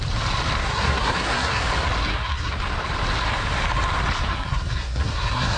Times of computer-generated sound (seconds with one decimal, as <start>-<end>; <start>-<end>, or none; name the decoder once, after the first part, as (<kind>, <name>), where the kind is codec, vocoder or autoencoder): 0.6-1.6 (codec, SNAC); 2.0-2.5; 4.3-5.6